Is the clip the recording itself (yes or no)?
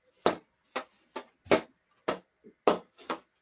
yes